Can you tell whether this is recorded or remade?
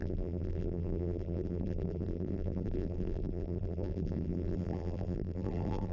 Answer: remade